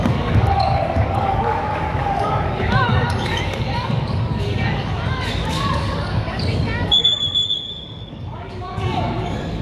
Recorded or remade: remade